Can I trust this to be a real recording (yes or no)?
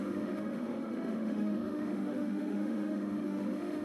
no